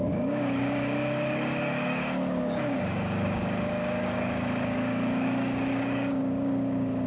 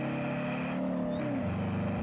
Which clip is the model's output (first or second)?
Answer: first